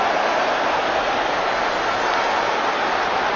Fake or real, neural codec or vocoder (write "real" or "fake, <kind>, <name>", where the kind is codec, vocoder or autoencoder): real